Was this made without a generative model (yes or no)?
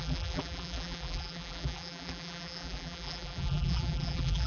no